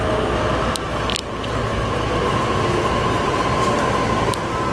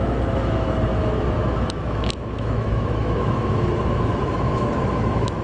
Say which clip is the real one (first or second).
first